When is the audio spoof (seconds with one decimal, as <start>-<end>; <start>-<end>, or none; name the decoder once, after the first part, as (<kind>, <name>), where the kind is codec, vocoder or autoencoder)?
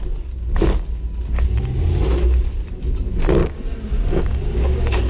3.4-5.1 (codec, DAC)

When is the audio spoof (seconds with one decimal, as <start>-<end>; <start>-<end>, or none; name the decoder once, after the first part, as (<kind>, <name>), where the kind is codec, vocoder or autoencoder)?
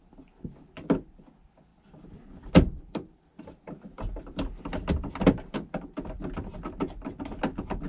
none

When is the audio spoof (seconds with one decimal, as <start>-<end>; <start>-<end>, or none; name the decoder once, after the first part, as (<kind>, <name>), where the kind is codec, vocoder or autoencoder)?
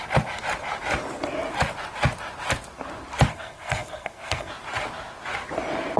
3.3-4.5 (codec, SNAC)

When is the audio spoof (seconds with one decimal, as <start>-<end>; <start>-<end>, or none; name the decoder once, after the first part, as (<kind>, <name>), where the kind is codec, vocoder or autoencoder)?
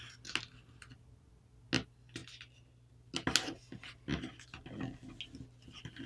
none